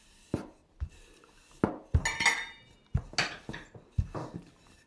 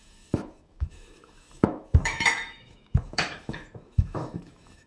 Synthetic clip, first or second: second